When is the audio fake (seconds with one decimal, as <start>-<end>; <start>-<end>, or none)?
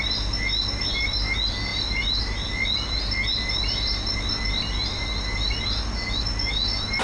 none